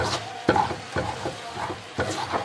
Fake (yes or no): no